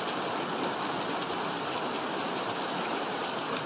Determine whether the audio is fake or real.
real